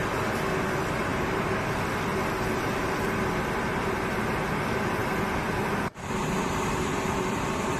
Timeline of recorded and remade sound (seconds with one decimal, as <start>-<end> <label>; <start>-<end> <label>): 0.0-1.1 recorded; 1.1-1.7 remade; 1.7-6.2 recorded; 6.2-7.8 remade